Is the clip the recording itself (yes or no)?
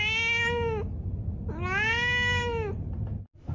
yes